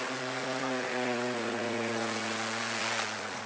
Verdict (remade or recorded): remade